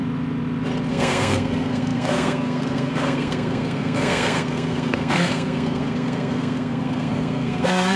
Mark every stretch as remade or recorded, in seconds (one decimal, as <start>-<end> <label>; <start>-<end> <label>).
0.0-0.9 recorded; 0.9-8.0 remade